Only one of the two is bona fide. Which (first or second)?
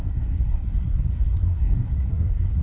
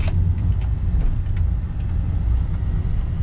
second